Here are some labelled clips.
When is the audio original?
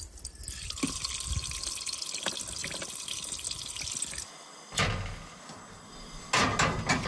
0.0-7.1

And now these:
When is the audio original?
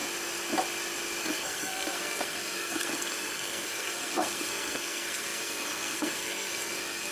0.0-1.2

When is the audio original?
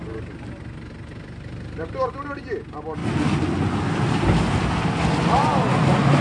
0.0-6.2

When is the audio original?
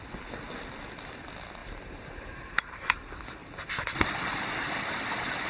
0.0-1.6; 2.7-5.5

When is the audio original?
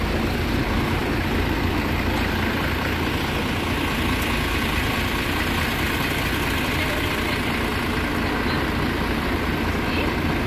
0.0-10.5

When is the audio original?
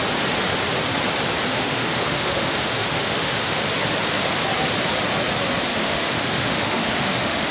0.0-1.5; 3.6-5.7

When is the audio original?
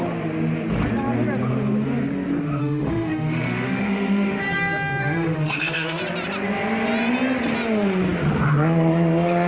0.0-2.6; 4.4-5.0; 6.0-9.5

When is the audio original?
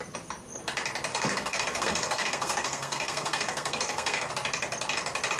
0.0-1.1; 4.3-5.4